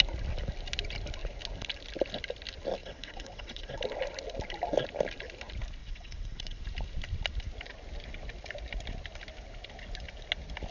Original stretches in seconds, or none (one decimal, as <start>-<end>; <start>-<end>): 0.0-2.8; 3.8-5.8; 6.6-10.7